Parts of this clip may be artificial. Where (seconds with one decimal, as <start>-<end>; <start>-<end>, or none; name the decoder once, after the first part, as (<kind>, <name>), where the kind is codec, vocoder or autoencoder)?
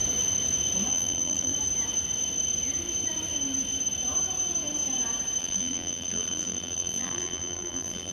0.9-1.5 (vocoder, BigVGAN v2); 5.4-8.1